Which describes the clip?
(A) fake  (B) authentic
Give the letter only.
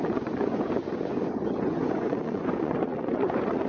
A